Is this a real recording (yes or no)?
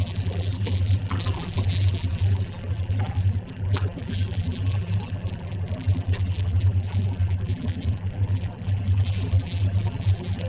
no